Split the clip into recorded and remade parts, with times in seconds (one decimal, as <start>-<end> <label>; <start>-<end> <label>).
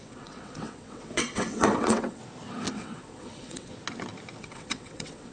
0.0-2.2 remade; 2.2-2.7 recorded; 2.7-3.7 remade; 3.7-4.4 recorded; 4.4-5.3 remade